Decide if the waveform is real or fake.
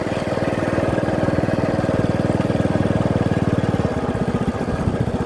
real